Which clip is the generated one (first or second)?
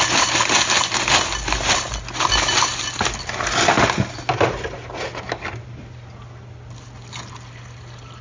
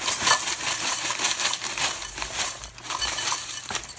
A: second